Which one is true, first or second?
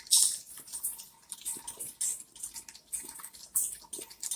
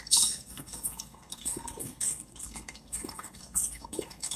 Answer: first